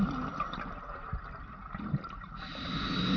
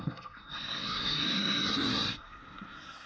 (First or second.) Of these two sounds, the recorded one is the first